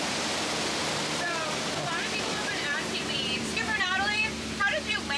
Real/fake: fake